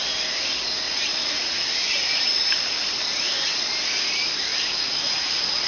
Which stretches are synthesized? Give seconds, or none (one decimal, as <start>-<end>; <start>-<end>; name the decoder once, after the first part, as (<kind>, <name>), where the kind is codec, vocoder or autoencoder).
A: 1.1-1.6 (vocoder, Vocos); 4.5-5.3